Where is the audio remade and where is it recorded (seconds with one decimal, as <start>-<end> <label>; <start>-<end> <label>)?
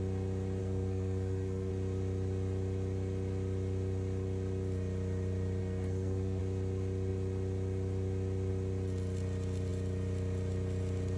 0.0-0.6 recorded; 0.6-1.7 remade; 1.7-5.6 recorded; 5.6-6.4 remade; 6.4-11.2 recorded